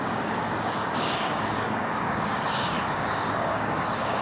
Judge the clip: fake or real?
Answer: fake